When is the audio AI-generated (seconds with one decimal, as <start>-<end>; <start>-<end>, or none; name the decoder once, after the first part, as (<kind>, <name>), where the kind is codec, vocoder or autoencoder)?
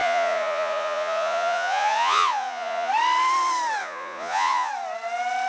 0.0-2.9 (vocoder, Vocos); 3.8-4.7